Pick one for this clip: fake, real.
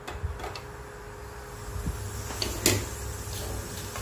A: real